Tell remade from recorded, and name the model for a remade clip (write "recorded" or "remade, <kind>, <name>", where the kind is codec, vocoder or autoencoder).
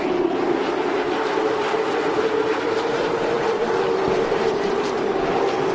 remade, vocoder, BigVGAN v2